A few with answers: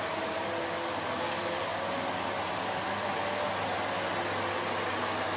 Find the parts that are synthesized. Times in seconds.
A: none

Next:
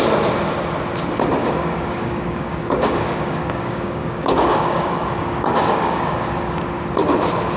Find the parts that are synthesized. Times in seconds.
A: 1.4-6.0 (codec, DAC)

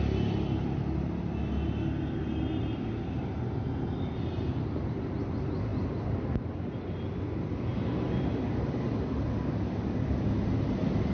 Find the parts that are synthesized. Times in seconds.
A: 7.7-8.3 (vocoder, BigVGAN v2)